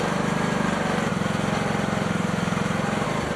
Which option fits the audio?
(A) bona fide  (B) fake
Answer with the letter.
A